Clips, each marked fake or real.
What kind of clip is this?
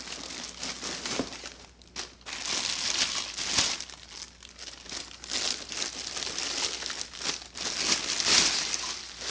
real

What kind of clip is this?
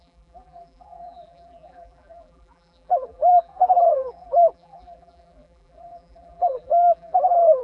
fake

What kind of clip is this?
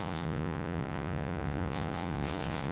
fake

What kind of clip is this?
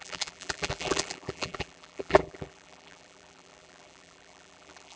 fake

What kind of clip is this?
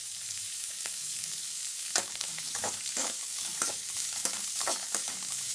fake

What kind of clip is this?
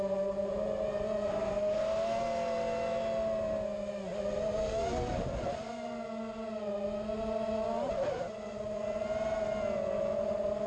real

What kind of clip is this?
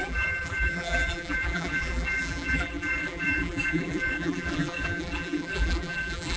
fake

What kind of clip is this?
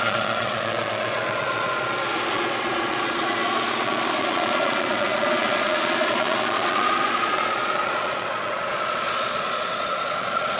fake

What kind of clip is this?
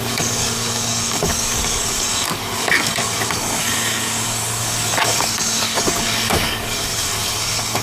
fake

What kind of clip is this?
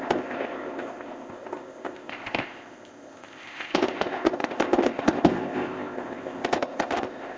fake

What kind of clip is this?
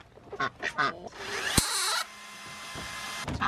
real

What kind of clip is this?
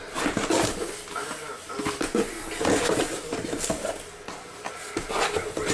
real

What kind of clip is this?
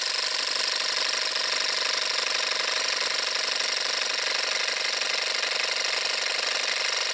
real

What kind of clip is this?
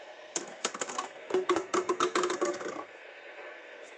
fake